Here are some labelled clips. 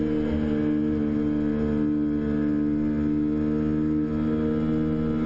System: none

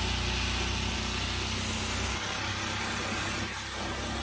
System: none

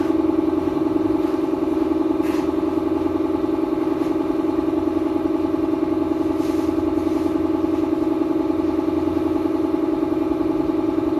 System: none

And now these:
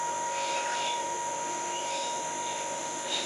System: autoencoder, DAC-VAE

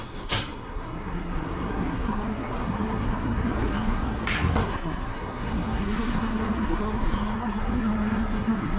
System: codec, SNAC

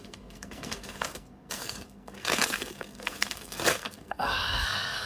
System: codec, SNAC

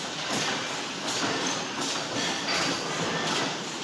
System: none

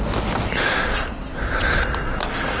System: none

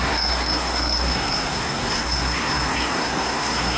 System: codec, SNAC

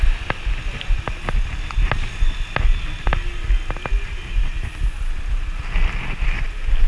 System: none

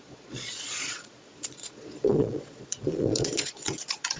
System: vocoder, Vocos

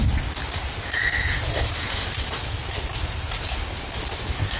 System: none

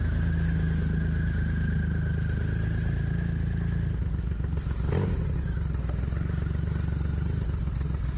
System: none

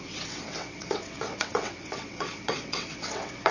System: vocoder, WaveNeXt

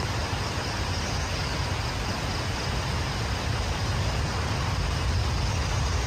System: none